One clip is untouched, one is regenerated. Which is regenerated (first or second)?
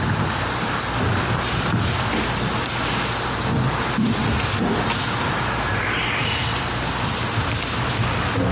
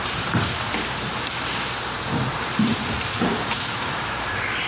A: second